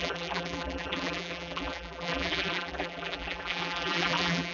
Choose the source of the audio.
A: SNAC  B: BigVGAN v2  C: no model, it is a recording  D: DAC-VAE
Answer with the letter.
B